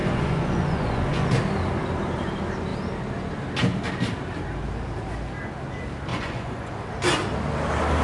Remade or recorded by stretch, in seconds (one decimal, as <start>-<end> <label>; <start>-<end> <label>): 0.0-1.3 remade; 1.3-6.1 recorded; 6.1-6.7 remade; 6.7-8.0 recorded